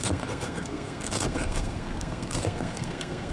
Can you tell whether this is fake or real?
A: fake